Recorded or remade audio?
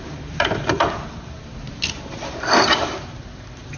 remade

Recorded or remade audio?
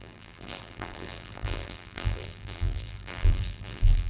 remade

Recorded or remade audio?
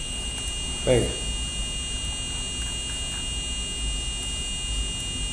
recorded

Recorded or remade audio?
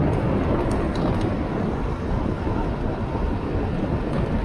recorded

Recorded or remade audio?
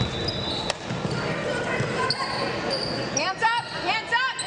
recorded